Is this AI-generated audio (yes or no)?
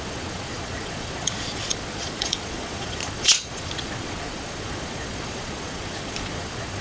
yes